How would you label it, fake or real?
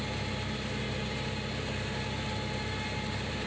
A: real